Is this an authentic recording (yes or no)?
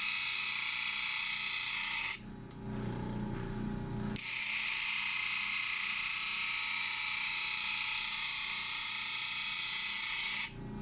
yes